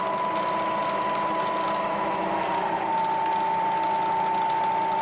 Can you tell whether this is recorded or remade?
recorded